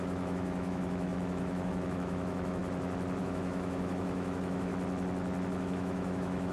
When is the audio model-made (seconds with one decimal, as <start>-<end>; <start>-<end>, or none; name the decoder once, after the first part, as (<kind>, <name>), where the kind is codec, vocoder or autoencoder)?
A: 0.0-2.6 (autoencoder, DAC-VAE); 3.2-4.7; 5.6-6.5